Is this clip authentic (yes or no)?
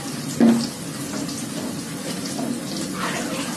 yes